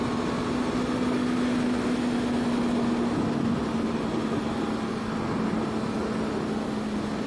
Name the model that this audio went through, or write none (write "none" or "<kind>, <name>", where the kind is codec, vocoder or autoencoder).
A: none